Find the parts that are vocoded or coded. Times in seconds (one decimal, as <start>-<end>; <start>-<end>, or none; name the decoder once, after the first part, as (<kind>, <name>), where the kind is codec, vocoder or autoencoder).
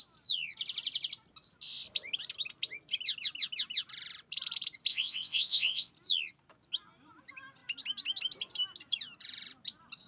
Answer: 4.9-5.9 (vocoder, WaveNeXt)